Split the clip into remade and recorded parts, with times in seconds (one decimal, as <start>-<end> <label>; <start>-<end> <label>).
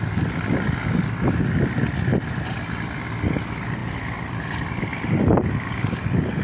0.0-2.1 remade; 2.1-3.4 recorded; 3.4-6.4 remade